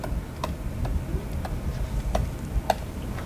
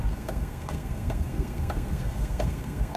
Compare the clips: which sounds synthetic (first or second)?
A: second